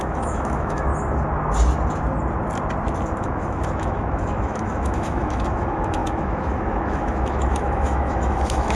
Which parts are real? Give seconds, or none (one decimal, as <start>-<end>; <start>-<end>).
0.9-3.2

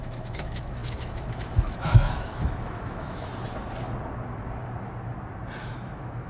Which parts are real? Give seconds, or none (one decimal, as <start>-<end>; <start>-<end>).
3.3-5.6

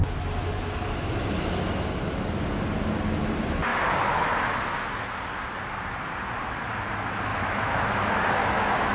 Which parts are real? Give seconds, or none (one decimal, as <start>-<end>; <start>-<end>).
0.0-7.3; 8.2-8.9

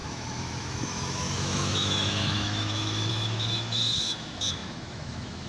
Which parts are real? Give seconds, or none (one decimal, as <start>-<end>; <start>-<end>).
none

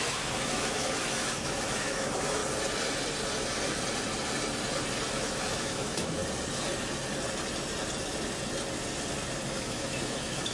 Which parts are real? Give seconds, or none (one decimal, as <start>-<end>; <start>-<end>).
2.4-5.1; 6.2-9.6

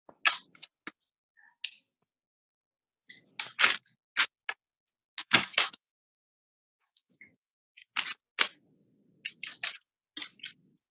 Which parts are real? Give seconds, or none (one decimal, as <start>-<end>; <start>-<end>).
0.0-5.2; 7.9-10.9

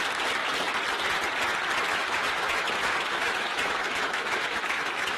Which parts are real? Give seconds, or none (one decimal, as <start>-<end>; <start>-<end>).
0.0-1.9